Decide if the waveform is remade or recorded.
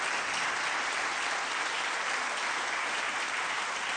recorded